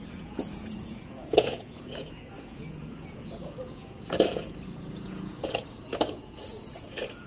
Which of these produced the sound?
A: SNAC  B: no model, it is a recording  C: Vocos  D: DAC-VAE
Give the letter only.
C